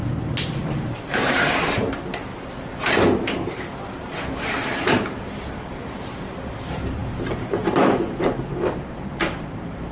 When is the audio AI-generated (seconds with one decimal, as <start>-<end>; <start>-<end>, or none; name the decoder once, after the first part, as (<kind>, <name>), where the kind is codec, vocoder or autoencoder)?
0.0-2.3 (vocoder, BigVGAN v2); 3.6-9.9